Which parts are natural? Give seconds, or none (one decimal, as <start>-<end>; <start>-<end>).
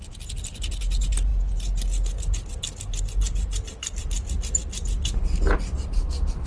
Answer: 0.0-6.5